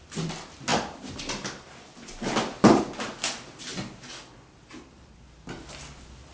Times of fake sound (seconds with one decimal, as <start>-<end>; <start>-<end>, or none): none